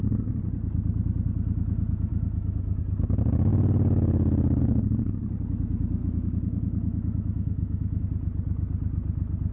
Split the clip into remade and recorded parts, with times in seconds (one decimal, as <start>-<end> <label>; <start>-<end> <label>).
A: 0.0-2.1 recorded; 2.1-2.8 remade; 2.8-6.0 recorded; 6.0-8.0 remade; 8.0-9.5 recorded